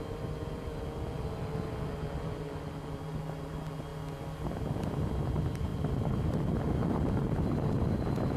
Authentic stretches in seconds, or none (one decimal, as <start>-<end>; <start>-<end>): 0.0-5.7; 7.8-8.4

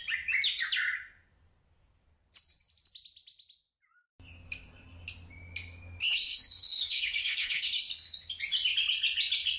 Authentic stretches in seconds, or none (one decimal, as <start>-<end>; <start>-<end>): 0.0-6.0; 7.8-9.6